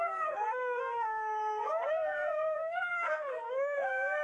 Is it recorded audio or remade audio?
remade